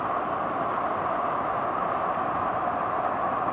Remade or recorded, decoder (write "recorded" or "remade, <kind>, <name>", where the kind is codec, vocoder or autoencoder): recorded